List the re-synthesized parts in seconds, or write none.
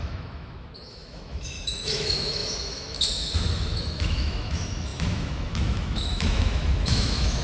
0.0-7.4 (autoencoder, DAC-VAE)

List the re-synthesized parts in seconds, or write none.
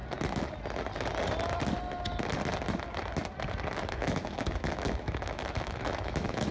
3.9-6.5 (autoencoder, DAC-VAE)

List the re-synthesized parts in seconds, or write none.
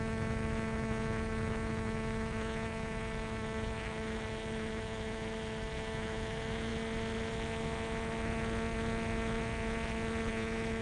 0.0-6.7 (autoencoder, DAC-VAE); 10.3-10.8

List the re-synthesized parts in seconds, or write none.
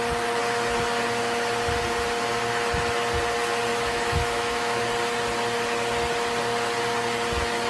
3.7-4.8 (autoencoder, DAC-VAE)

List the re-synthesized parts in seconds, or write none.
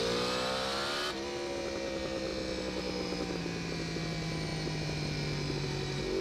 none